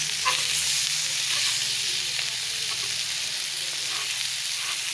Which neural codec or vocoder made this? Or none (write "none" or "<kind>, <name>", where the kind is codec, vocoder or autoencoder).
none